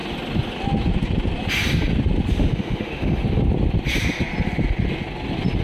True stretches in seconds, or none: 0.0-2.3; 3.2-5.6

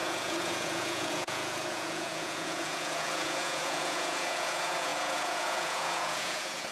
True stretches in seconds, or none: none

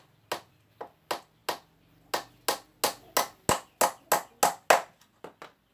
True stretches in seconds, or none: 0.0-5.7

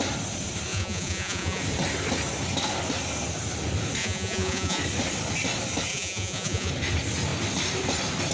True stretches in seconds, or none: 0.0-0.7; 1.6-4.0; 4.8-5.9; 6.7-8.3

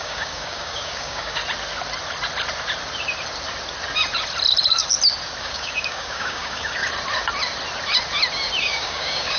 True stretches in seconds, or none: 1.4-5.4; 6.8-8.6